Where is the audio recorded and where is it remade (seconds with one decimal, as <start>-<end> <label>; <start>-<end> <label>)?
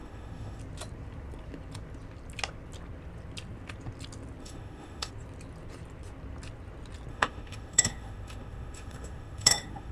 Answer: 0.0-0.6 remade; 0.6-4.4 recorded; 4.4-5.1 remade; 5.1-7.1 recorded; 7.1-9.9 remade